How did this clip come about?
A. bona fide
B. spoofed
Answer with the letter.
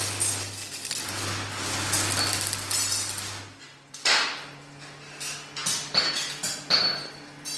A